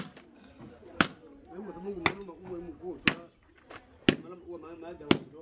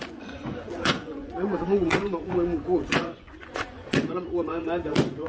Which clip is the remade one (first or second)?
second